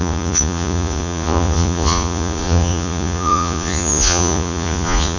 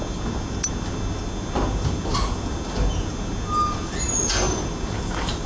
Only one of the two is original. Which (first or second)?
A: second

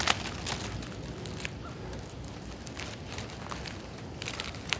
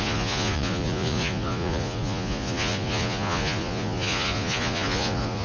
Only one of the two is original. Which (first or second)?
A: first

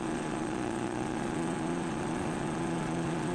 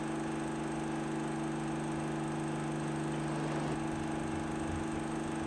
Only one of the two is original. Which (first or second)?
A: second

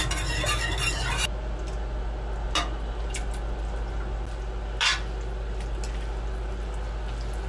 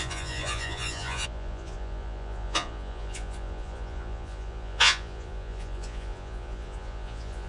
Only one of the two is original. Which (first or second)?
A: first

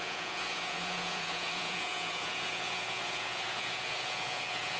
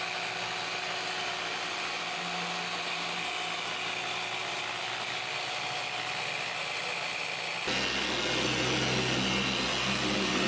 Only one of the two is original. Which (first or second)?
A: second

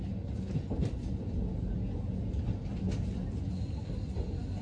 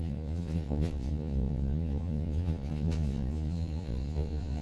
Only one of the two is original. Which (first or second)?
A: first